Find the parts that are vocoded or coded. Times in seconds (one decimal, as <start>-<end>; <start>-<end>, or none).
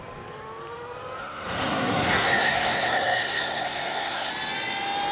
1.2-4.3